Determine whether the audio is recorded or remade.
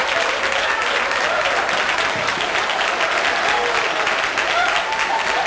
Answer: recorded